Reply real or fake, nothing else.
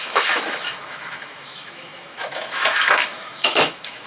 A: fake